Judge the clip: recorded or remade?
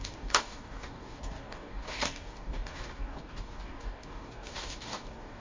remade